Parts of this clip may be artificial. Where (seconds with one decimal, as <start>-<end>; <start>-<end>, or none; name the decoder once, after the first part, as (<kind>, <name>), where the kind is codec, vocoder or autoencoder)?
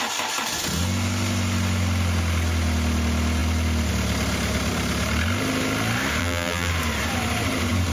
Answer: 6.2-6.7 (vocoder, BigVGAN v2)